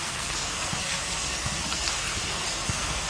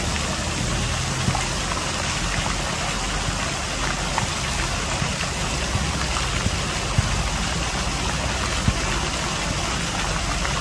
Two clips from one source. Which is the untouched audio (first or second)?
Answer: second